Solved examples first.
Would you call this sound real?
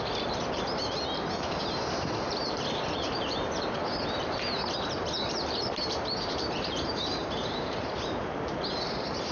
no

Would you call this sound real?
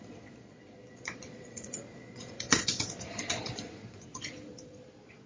no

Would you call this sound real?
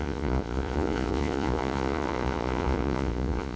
no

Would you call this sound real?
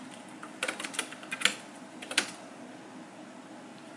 yes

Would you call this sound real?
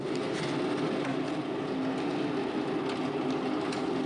yes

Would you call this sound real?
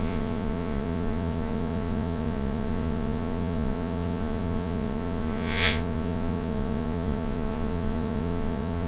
no